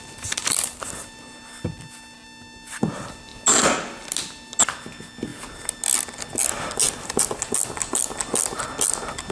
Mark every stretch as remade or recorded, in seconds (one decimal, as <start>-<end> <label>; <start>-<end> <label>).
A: 0.0-9.3 recorded